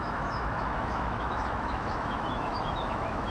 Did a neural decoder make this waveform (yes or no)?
yes